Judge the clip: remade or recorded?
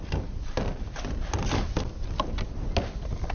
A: recorded